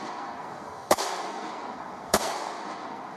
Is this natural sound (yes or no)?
no